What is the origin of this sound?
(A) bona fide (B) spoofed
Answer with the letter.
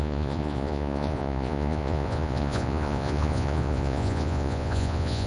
B